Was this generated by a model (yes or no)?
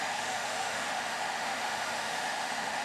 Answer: yes